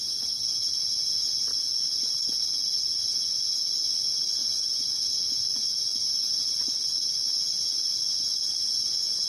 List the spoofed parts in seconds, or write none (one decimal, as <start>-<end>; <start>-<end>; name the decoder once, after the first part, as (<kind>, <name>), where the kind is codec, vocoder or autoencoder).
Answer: 1.5-3.0 (vocoder, BigVGAN v2); 4.4-5.0; 5.9-6.5